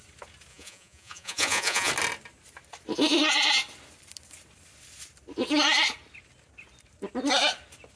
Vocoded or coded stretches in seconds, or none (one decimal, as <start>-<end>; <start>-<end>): 0.5-1.9